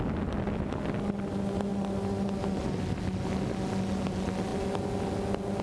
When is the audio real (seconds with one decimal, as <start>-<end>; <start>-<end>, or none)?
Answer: 0.0-5.6